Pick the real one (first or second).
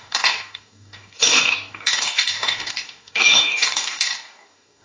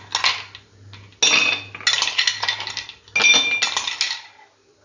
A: second